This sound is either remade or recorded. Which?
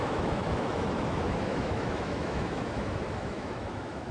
remade